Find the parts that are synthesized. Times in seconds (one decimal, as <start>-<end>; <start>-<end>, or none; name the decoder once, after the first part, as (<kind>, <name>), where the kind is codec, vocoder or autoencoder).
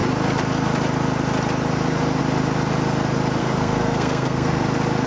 3.4-4.6 (codec, SNAC)